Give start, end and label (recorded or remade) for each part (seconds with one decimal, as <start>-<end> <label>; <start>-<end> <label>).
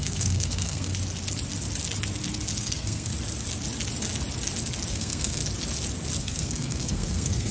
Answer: 0.0-0.9 remade; 0.9-2.6 recorded; 2.6-3.1 remade; 3.1-4.9 recorded; 4.9-5.4 remade; 5.4-6.2 recorded; 6.2-7.5 remade